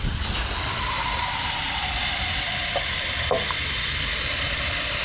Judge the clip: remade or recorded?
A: remade